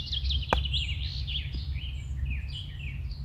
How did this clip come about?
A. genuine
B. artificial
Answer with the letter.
A